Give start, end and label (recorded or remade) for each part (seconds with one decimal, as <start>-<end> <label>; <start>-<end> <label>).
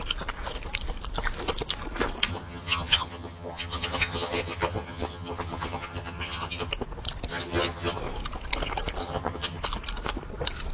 0.0-2.3 recorded; 2.3-6.7 remade; 6.7-7.3 recorded; 7.3-8.0 remade; 8.0-9.0 recorded; 9.0-9.6 remade; 9.6-10.7 recorded